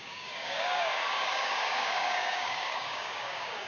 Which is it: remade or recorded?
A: remade